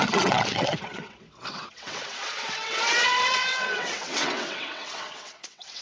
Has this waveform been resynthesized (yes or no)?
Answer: yes